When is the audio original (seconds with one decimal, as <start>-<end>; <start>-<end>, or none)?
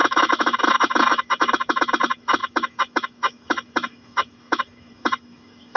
none